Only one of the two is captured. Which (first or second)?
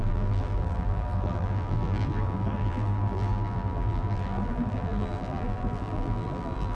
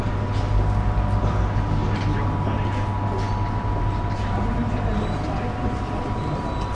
second